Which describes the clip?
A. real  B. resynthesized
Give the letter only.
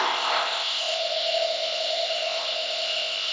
B